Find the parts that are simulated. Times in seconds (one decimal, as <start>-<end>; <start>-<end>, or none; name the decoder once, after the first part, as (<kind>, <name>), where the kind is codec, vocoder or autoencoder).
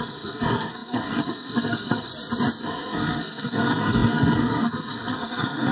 0.0-2.1 (codec, SNAC); 2.6-5.7